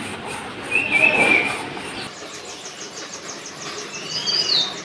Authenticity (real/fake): real